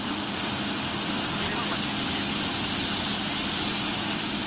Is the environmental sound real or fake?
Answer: real